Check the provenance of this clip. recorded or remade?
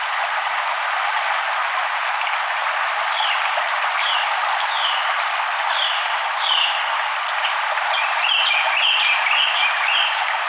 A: recorded